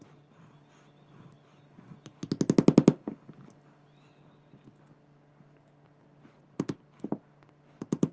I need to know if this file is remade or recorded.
recorded